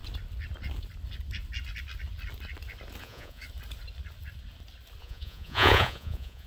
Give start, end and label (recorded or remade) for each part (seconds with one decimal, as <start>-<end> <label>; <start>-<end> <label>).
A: 0.0-3.0 recorded; 3.0-3.4 remade; 3.4-5.0 recorded; 5.0-6.5 remade